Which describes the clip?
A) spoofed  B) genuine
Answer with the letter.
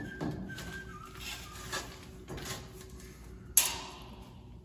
B